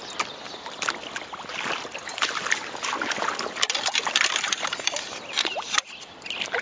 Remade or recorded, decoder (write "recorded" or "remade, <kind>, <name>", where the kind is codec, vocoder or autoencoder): recorded